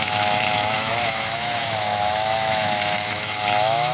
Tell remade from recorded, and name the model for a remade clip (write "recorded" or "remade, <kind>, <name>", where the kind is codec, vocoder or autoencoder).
remade, autoencoder, DAC-VAE